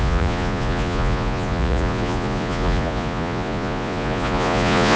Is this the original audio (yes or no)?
no